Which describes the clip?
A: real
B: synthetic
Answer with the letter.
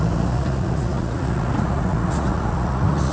B